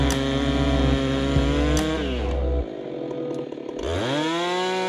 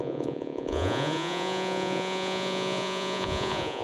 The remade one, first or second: second